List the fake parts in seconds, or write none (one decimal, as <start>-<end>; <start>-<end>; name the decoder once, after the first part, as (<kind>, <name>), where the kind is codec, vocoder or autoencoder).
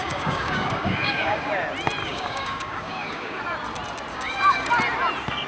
0.0-1.5 (codec, DAC); 2.0-3.4; 4.1-4.7